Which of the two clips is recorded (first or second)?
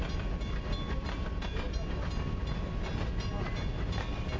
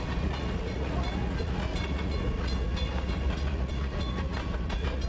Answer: first